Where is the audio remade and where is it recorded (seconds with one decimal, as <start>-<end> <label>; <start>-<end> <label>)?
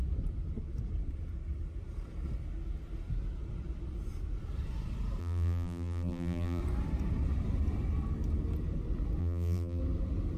0.0-5.2 recorded; 5.2-6.6 remade; 6.6-9.2 recorded; 9.2-9.8 remade; 9.8-10.4 recorded